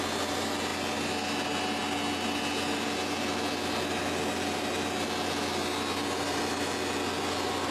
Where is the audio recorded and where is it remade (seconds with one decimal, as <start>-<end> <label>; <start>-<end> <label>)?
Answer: 0.0-7.7 recorded